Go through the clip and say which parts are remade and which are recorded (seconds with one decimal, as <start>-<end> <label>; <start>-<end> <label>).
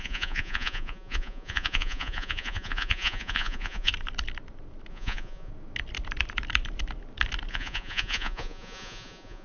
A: 0.0-3.9 remade; 3.9-4.9 recorded; 4.9-5.5 remade; 5.5-7.5 recorded; 7.5-9.4 remade